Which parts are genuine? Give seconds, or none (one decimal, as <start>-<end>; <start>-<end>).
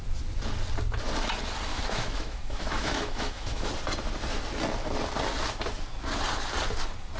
0.0-1.7; 3.7-7.2